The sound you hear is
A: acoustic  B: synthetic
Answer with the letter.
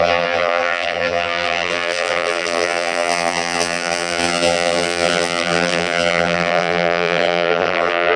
B